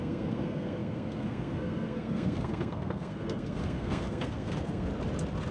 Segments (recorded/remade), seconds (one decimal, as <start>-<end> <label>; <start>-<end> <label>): 0.0-4.9 remade; 4.9-5.5 recorded